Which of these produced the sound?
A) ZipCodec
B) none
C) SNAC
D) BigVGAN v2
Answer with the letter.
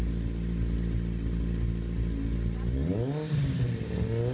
B